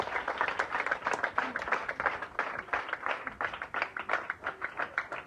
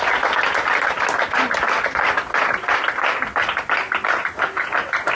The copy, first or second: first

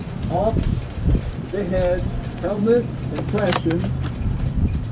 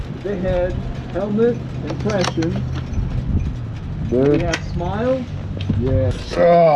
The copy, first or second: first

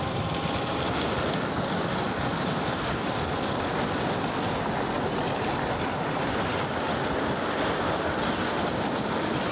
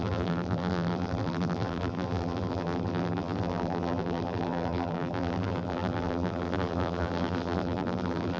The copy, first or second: second